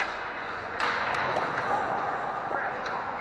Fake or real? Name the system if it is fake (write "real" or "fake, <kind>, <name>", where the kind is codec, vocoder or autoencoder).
fake, vocoder, Vocos